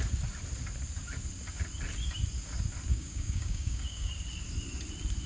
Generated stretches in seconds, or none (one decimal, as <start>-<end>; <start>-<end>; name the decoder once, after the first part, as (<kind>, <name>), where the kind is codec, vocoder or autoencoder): 2.9-4.1 (codec, DAC)